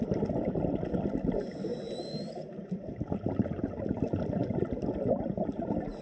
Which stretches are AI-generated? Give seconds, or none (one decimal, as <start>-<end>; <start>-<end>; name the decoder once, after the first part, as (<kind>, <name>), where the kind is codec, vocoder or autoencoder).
0.0-6.0 (vocoder, BigVGAN v2)